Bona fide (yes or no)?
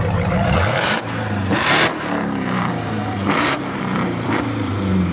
no